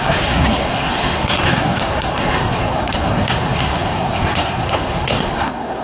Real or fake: fake